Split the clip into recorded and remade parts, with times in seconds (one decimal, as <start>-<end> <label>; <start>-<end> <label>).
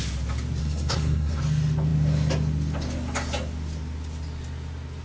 0.0-0.6 recorded; 0.6-1.4 remade; 1.4-5.0 recorded